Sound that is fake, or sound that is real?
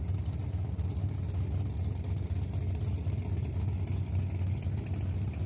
real